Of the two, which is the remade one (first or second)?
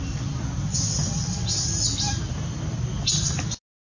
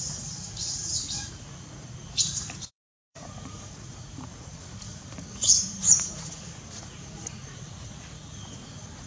second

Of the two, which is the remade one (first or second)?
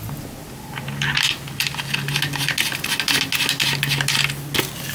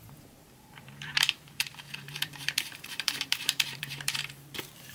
second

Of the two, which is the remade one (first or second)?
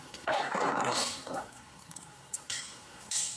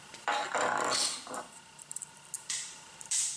first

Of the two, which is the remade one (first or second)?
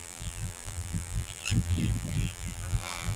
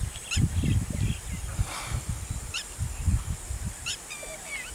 first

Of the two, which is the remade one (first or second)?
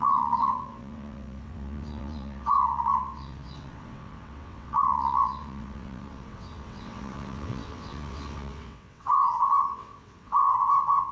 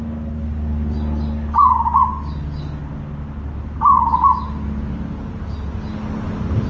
first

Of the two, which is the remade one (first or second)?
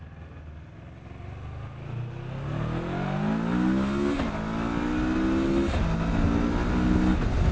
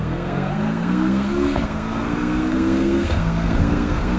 second